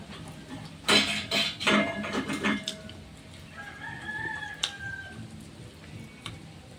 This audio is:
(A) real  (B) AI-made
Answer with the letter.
B